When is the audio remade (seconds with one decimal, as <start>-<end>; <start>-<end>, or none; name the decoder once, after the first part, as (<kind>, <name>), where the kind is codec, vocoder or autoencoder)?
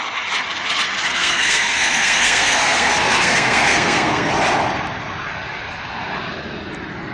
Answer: 1.1-4.3 (codec, SNAC)